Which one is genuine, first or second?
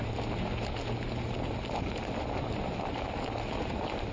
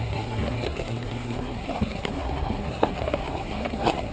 first